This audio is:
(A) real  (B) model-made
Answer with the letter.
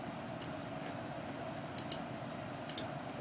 A